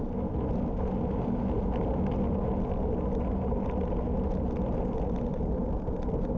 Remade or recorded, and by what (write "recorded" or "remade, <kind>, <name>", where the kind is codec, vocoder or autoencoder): recorded